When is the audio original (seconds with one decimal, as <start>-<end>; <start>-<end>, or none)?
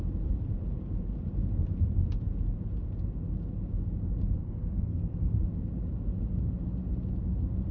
0.0-4.4; 5.3-7.7